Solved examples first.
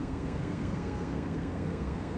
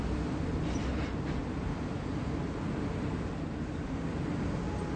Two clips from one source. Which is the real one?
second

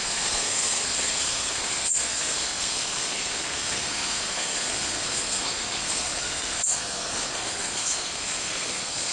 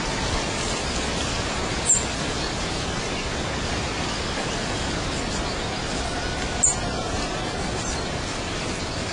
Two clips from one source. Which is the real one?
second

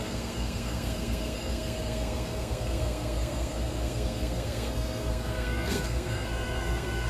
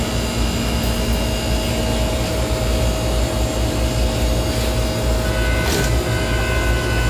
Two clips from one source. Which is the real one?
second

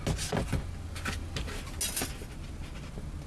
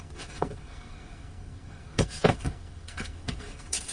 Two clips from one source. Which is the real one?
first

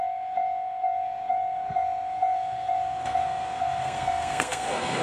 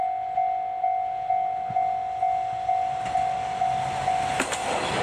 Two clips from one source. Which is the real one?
second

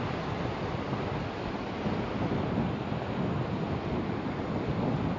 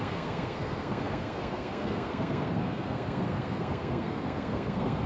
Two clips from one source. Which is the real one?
first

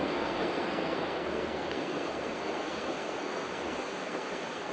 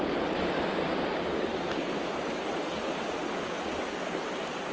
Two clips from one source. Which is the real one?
second